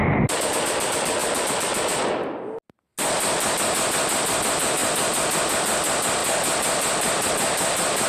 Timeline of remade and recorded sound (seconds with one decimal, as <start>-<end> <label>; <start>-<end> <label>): 0.0-8.1 recorded